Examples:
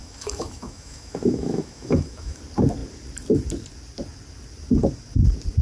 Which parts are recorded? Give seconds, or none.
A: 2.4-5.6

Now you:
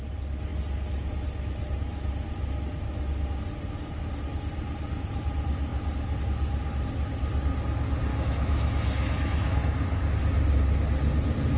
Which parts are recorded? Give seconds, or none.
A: 0.0-8.1; 10.1-11.6

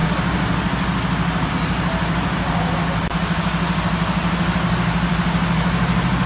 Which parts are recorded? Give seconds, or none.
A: 0.0-6.3

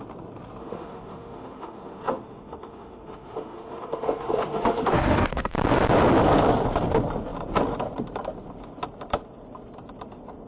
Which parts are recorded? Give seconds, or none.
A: 0.0-0.6; 5.5-10.5

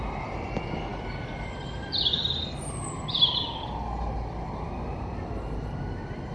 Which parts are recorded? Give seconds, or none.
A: 0.0-6.3